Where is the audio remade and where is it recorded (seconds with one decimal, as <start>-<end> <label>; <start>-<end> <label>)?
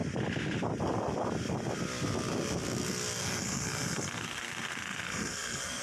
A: 0.0-3.2 recorded; 3.2-5.8 remade